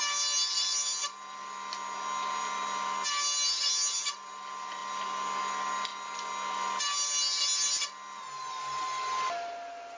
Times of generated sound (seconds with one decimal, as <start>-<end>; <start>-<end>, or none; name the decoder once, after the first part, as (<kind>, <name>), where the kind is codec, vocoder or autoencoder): none